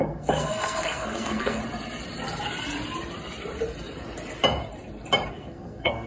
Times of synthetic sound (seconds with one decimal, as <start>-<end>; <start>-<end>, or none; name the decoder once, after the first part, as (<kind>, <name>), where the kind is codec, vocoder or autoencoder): 0.0-1.6 (codec, SNAC); 5.3-6.1